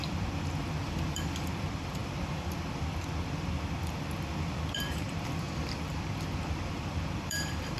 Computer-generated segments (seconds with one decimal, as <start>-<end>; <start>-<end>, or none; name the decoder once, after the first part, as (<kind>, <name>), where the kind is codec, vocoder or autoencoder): 0.0-7.8 (vocoder, BigVGAN v2)